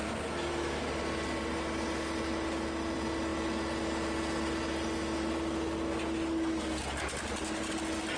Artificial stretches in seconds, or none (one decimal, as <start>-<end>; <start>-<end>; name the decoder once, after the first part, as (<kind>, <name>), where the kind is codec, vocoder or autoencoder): none